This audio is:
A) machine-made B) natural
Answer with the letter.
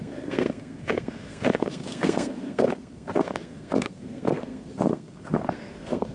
A